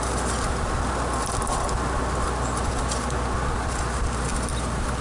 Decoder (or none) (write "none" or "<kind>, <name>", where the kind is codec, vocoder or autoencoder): vocoder, BigVGAN v2